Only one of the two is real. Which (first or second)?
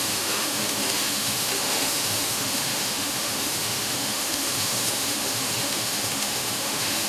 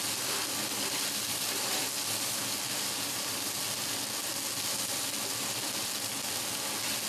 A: second